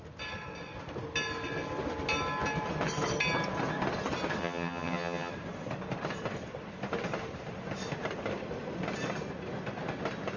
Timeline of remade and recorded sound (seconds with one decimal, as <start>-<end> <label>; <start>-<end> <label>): 0.0-4.4 recorded; 4.4-5.3 remade; 5.3-10.4 recorded